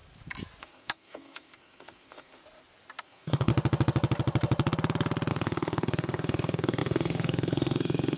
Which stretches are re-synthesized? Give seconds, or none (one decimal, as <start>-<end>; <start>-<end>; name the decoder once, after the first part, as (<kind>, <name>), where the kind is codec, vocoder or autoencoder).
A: 0.6-2.4 (codec, SNAC); 3.0-3.5; 5.3-8.2